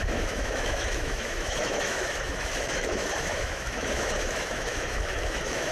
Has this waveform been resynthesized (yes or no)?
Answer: yes